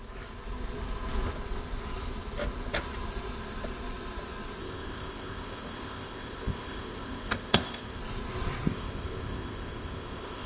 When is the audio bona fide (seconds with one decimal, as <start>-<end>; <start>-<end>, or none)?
0.0-4.6; 8.0-8.7